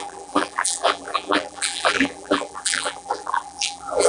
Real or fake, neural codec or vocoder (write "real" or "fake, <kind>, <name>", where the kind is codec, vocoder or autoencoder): fake, vocoder, BigVGAN v2